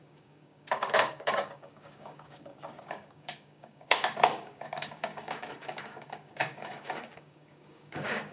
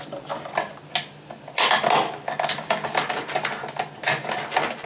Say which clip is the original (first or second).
second